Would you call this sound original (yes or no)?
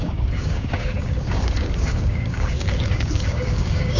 no